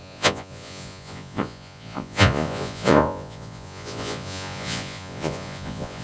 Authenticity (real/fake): fake